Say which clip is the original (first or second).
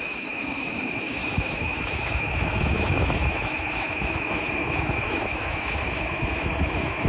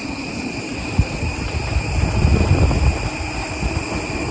second